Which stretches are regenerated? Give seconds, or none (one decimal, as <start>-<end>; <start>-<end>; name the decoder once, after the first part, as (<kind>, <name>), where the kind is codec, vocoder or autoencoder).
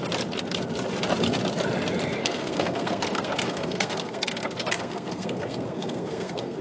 2.2-6.6 (codec, SNAC)